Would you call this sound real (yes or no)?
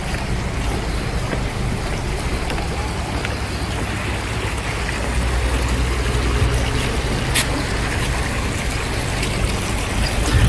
yes